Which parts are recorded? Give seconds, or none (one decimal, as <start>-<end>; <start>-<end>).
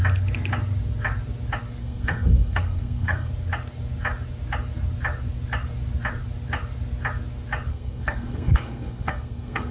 0.0-1.8; 3.3-7.7